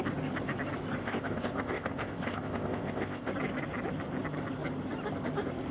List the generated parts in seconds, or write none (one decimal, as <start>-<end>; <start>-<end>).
1.0-3.3